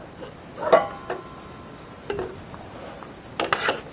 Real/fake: real